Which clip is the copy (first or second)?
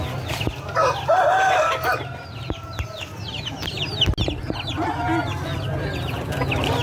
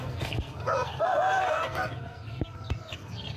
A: second